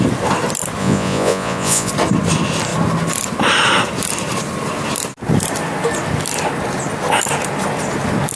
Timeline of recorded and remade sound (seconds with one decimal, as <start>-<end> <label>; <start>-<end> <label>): 0.0-0.8 recorded; 0.8-1.9 remade; 1.9-8.4 recorded